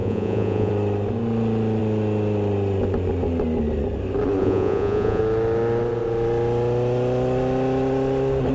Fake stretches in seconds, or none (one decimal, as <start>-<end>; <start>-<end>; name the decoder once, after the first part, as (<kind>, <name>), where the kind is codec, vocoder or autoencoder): 0.0-0.7 (vocoder, Vocos); 4.4-5.2